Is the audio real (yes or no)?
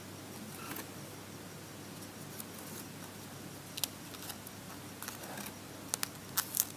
yes